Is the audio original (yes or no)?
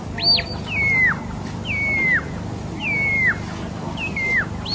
yes